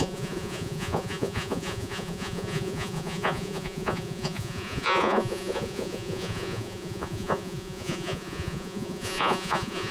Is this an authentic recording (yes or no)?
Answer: no